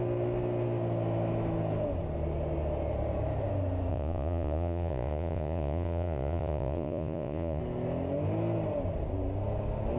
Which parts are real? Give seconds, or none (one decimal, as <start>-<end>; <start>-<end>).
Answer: 0.0-3.9; 7.6-10.0